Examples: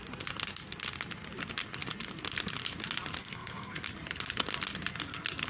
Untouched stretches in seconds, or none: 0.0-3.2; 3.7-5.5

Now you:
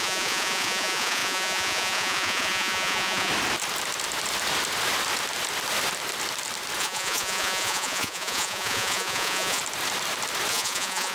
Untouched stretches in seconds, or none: 3.3-6.8; 9.6-10.5